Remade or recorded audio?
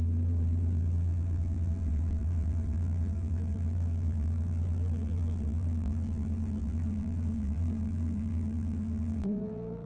remade